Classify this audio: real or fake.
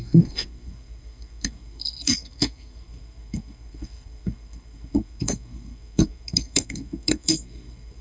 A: fake